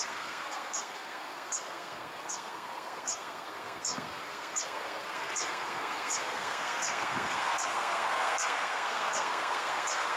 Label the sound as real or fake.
fake